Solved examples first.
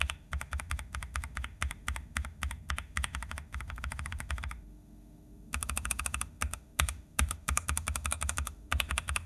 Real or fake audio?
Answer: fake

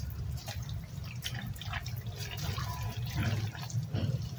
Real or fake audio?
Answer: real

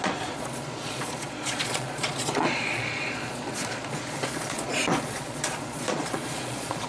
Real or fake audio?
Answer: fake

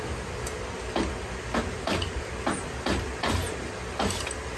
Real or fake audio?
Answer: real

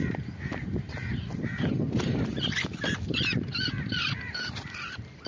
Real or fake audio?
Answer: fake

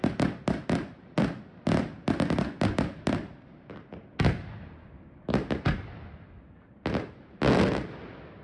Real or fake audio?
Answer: real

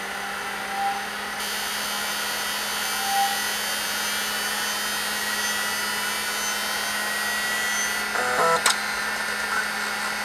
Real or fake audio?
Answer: real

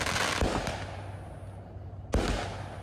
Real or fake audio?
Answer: real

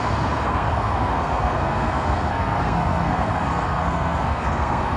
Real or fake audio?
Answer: fake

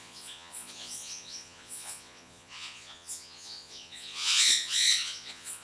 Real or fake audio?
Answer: fake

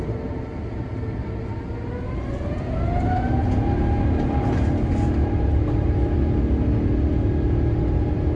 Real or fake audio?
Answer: real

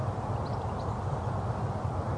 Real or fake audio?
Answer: real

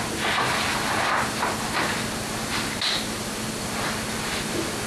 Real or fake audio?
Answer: real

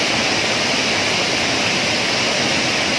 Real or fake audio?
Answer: real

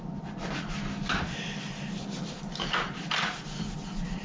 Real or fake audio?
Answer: real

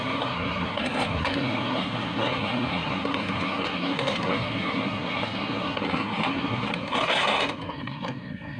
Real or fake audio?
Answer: fake